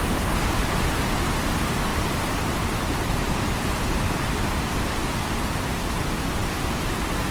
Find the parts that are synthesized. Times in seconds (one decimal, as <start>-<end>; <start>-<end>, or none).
1.9-4.4